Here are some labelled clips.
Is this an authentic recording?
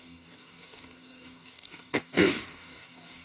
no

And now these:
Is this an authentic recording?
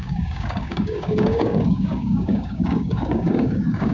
no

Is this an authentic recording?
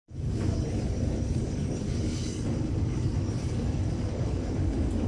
no